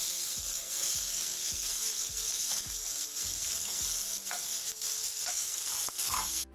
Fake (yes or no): yes